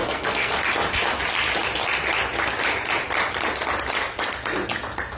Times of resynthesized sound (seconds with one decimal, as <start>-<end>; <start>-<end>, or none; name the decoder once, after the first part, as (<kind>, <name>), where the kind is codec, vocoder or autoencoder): 0.0-0.6 (codec, SNAC)